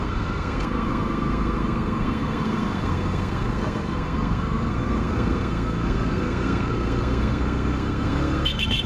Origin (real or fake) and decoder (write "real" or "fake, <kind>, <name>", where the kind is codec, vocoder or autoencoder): fake, codec, SNAC